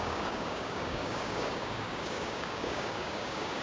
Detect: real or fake fake